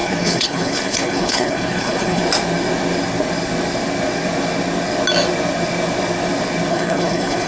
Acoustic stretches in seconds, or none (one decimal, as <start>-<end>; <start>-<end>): 2.2-6.7